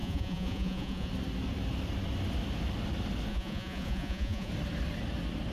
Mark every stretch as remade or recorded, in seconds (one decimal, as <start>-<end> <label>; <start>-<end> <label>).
0.0-1.1 remade; 1.1-3.3 recorded; 3.3-4.5 remade; 4.5-5.5 recorded